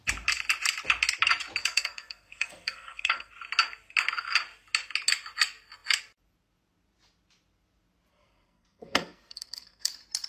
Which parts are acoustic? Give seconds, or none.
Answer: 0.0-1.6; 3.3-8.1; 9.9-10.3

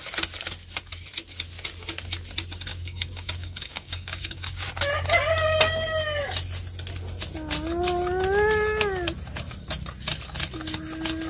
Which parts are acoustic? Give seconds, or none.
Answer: 0.0-2.7; 4.7-11.3

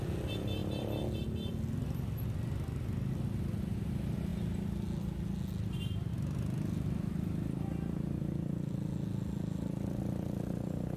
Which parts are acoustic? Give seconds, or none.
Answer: 0.0-11.0